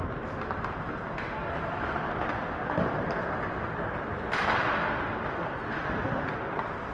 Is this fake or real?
real